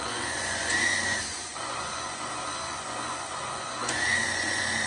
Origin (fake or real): fake